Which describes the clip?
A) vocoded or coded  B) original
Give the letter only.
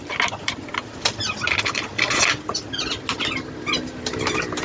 B